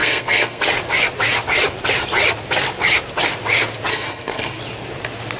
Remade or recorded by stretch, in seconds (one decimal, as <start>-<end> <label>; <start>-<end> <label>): 0.0-0.6 remade; 0.6-3.9 recorded; 3.9-4.6 remade; 4.6-5.4 recorded